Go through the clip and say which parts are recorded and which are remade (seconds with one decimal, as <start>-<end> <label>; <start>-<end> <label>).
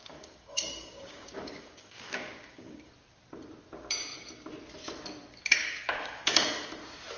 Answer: 0.0-2.9 remade; 2.9-5.6 recorded; 5.6-6.8 remade; 6.8-7.2 recorded